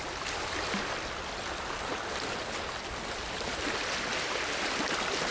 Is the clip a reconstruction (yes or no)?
no